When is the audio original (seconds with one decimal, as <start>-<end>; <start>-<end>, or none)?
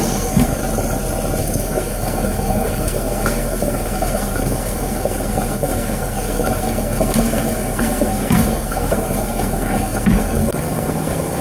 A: 0.6-1.4